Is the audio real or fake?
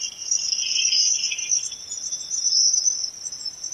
real